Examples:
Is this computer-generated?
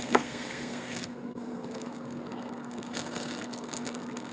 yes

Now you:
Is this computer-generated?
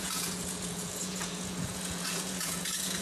yes